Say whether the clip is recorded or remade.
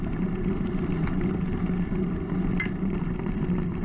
recorded